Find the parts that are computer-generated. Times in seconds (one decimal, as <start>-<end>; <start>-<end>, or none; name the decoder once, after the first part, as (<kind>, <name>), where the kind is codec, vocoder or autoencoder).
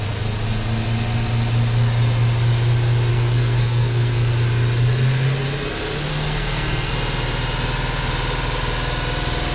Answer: 3.1-4.3 (codec, SNAC); 6.1-6.9